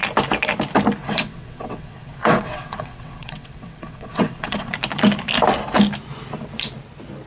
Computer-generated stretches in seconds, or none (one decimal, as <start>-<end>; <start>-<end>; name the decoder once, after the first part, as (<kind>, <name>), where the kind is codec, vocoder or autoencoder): 1.0-4.7 (vocoder, WaveNeXt)